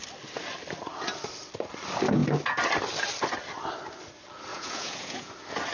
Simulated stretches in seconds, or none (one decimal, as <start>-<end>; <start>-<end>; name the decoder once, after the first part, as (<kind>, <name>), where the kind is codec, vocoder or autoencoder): 4.5-5.3 (vocoder, Vocos)